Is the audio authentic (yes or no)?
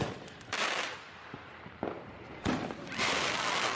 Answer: no